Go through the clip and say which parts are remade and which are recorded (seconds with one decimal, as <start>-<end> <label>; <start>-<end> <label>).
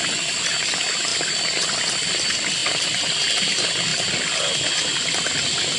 0.0-1.1 recorded; 1.1-1.9 remade; 1.9-2.6 recorded; 2.6-3.2 remade; 3.2-5.8 recorded